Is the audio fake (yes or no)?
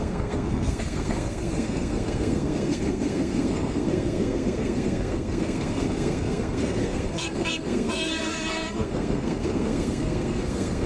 yes